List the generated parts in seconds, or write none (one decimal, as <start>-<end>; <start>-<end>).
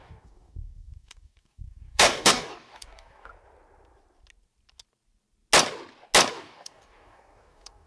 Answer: 0.0-3.3; 6.3-7.9